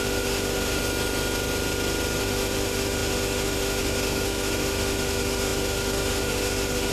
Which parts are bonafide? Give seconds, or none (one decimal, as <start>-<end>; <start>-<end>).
0.8-2.2